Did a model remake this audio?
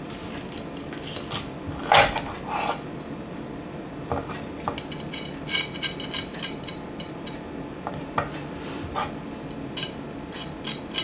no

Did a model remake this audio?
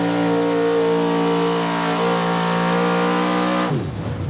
no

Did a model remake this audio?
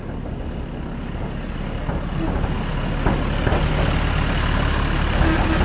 no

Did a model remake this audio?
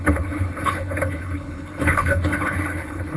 yes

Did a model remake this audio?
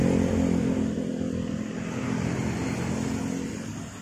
no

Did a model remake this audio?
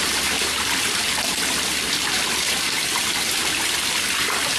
yes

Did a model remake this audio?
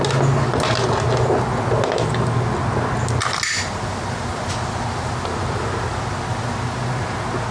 no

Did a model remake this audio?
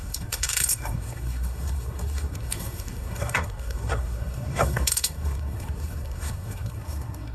yes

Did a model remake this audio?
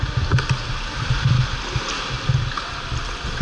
no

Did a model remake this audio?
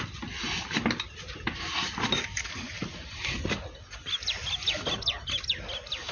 no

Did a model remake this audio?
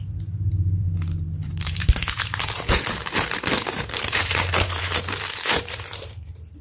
yes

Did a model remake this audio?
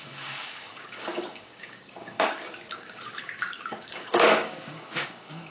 yes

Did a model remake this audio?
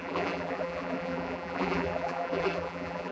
yes